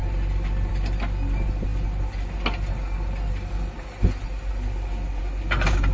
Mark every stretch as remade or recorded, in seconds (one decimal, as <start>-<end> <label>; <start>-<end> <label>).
0.0-5.9 recorded